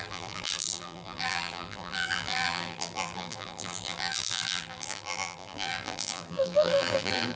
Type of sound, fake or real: fake